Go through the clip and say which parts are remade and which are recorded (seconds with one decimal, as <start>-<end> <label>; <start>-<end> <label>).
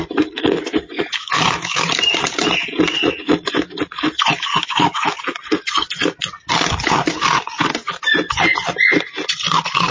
0.0-1.2 recorded; 1.2-1.9 remade; 1.9-4.5 recorded; 4.5-5.2 remade; 5.2-9.9 recorded